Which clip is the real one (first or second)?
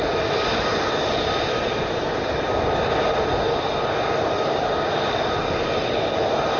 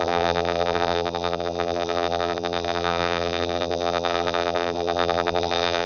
first